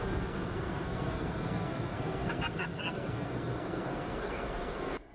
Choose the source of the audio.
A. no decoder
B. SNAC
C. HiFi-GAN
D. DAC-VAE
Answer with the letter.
B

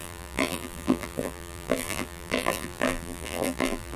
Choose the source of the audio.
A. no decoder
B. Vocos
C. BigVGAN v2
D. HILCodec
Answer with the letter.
C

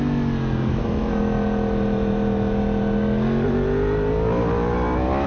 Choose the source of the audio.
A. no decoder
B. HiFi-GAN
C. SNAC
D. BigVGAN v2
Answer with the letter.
A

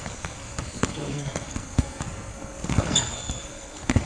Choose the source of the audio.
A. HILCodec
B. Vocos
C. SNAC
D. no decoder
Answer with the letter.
C